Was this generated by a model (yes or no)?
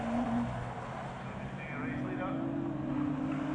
no